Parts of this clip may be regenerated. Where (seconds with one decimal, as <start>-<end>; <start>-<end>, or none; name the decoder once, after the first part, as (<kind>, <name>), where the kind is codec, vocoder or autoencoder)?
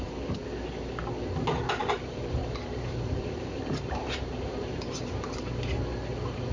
1.8-5.4 (vocoder, BigVGAN v2)